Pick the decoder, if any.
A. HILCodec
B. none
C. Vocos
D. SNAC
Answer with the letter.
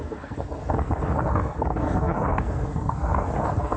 D